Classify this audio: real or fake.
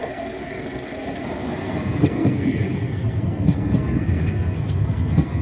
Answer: fake